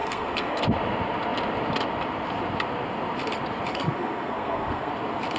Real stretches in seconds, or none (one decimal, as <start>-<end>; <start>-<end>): 0.6-3.7; 4.9-5.4